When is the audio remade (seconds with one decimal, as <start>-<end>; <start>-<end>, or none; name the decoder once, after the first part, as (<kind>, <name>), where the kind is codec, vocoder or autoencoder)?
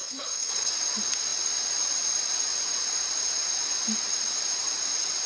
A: 0.0-0.7 (codec, HILCodec)